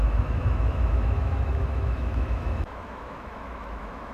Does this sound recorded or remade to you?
remade